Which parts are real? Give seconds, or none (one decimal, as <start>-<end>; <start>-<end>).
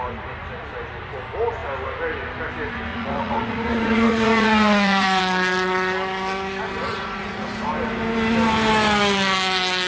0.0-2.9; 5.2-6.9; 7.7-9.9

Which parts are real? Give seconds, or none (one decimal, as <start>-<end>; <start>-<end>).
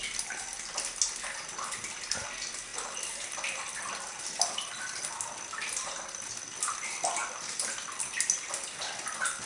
0.0-9.5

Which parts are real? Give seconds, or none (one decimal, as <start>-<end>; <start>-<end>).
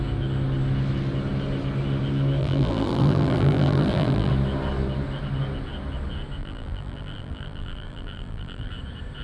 0.0-2.4; 4.3-6.4; 8.7-9.2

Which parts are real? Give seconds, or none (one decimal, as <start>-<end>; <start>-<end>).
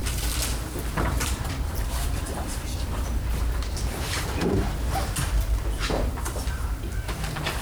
4.6-7.6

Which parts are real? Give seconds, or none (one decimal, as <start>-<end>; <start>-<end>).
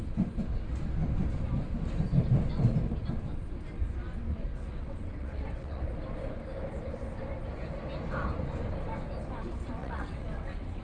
0.0-4.3; 5.8-9.8